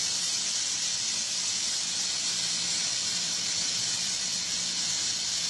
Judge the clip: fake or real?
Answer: fake